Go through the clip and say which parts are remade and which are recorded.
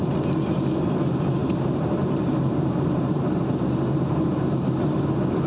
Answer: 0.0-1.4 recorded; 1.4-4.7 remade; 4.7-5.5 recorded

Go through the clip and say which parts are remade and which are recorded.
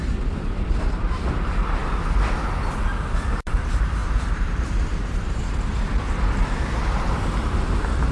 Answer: 0.0-1.8 remade; 1.8-3.3 recorded; 3.3-5.4 remade; 5.4-6.8 recorded; 6.8-8.1 remade